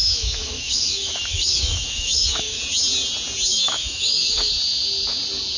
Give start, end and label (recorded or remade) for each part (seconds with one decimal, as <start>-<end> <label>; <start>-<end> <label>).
0.0-2.6 remade; 2.6-3.5 recorded; 3.5-4.5 remade; 4.5-5.6 recorded